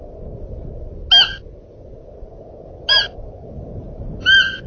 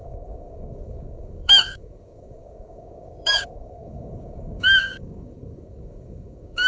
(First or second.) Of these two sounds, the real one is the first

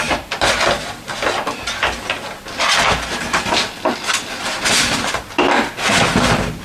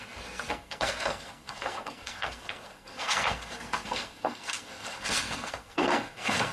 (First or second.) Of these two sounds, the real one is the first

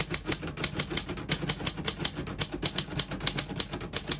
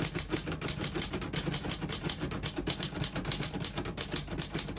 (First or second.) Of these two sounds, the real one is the first